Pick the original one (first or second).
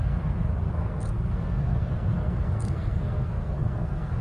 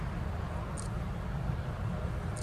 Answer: second